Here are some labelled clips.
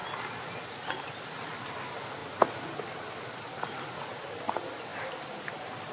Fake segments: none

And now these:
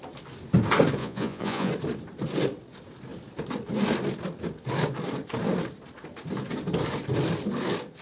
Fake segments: 1.0-1.7

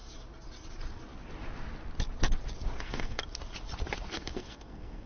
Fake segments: 2.8-3.2; 4.1-5.1

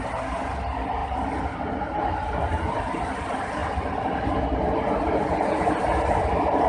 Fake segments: none

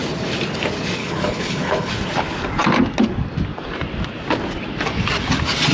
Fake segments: 1.0-1.9

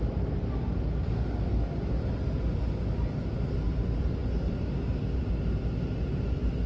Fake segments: none